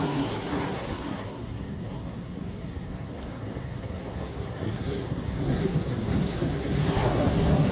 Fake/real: fake